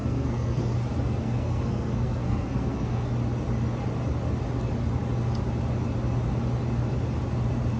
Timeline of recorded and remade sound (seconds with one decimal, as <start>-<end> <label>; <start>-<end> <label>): 0.0-0.6 remade; 0.6-1.2 recorded; 1.2-3.1 remade; 3.1-7.8 recorded